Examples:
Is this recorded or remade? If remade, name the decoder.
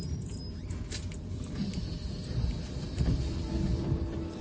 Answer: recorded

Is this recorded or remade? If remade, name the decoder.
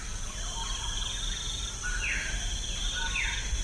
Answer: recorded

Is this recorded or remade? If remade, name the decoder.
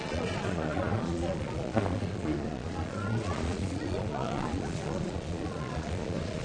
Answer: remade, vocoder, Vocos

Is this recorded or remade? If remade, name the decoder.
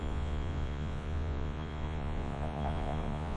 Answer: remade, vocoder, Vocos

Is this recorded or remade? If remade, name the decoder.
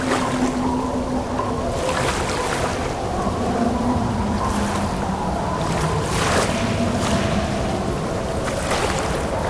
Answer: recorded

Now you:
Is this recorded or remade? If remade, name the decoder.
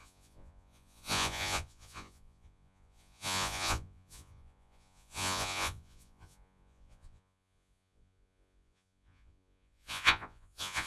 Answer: remade, vocoder, Vocos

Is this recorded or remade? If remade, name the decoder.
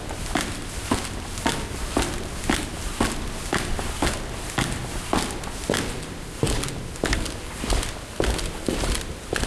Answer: recorded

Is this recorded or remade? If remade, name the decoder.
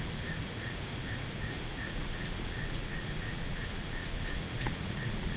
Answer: remade, vocoder, Vocos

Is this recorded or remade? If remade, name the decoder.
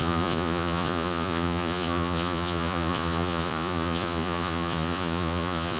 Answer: remade, vocoder, Vocos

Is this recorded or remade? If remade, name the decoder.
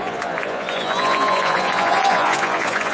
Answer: remade, vocoder, Vocos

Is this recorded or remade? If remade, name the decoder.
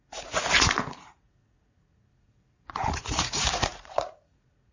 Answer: remade, vocoder, Vocos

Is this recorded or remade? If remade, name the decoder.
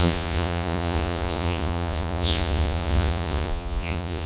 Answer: remade, vocoder, Vocos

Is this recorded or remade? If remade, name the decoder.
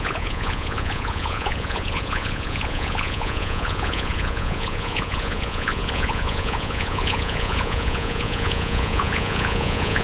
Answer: remade, vocoder, Vocos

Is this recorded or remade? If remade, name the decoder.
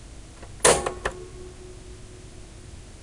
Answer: recorded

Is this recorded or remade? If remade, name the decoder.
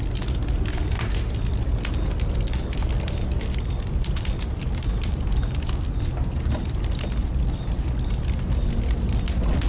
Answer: recorded